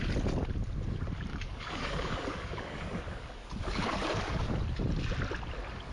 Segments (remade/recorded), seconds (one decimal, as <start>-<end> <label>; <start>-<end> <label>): 0.0-1.3 recorded; 1.3-4.5 remade; 4.5-5.9 recorded